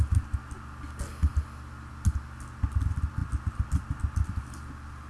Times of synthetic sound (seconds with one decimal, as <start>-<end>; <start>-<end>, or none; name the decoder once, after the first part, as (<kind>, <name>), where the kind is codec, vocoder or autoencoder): none